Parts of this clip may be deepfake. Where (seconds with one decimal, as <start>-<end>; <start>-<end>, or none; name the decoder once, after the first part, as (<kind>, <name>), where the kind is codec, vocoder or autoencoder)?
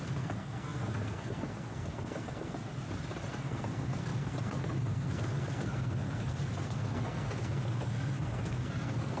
0.0-2.7 (codec, SNAC); 3.3-9.2